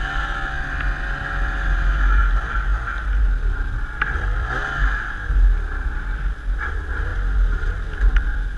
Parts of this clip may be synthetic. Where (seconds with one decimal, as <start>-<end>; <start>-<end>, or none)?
none